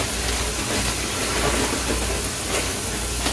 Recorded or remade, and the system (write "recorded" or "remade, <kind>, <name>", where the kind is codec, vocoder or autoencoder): recorded